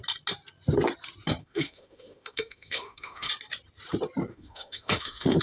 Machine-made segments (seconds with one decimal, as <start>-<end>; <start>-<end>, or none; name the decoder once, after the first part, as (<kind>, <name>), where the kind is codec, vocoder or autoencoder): 1.4-3.3 (autoencoder, DAC-VAE); 4.3-5.4